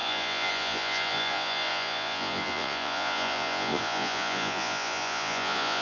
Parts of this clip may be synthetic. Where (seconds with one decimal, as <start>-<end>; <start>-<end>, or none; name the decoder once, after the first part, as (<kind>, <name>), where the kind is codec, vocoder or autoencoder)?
0.0-5.8 (vocoder, Vocos)